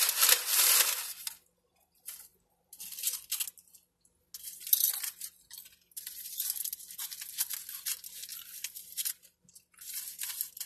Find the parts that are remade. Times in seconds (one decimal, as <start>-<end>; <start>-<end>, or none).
2.3-3.4; 8.3-9.4